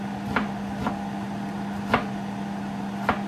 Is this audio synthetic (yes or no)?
no